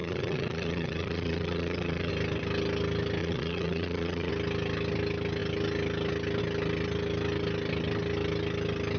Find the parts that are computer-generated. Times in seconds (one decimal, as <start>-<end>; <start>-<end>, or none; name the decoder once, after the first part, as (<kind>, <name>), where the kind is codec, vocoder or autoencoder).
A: 0.0-2.1 (vocoder, Vocos); 3.2-4.3